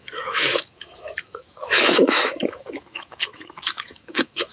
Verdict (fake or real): fake